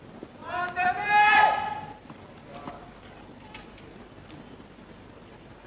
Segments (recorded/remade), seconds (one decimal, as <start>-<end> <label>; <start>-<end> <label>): 0.0-5.7 recorded